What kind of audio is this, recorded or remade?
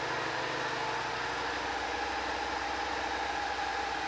recorded